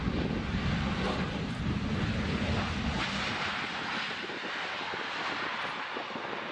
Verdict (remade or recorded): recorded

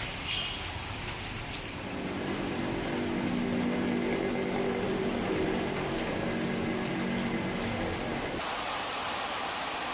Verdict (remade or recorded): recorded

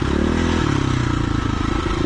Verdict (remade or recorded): recorded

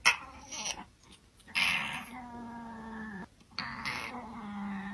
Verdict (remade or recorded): recorded